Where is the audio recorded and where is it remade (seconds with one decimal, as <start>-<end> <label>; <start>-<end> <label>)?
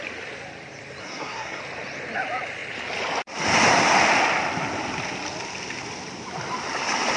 0.0-1.0 recorded; 1.0-1.6 remade; 1.6-7.2 recorded